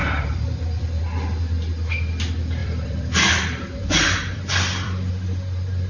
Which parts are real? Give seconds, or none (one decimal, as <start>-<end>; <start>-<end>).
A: 1.0-2.6; 5.1-5.9